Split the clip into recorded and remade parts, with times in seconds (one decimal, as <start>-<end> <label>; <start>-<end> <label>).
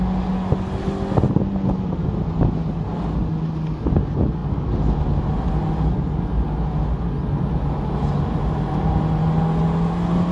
0.0-10.3 recorded